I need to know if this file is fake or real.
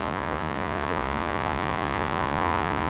fake